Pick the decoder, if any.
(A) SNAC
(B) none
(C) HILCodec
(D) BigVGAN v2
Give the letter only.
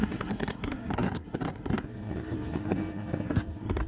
A